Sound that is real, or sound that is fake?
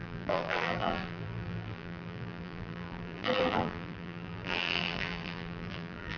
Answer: fake